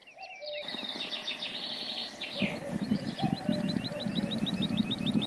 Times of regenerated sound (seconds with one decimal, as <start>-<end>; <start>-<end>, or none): none